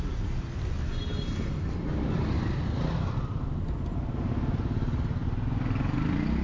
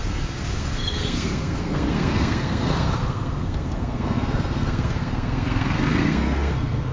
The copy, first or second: second